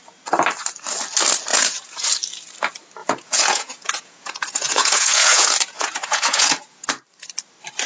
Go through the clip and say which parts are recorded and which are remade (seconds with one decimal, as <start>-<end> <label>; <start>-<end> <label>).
0.0-1.5 recorded; 1.5-2.1 remade; 2.1-3.0 recorded; 3.0-6.9 remade; 6.9-7.9 recorded